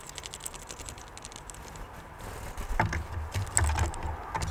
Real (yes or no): yes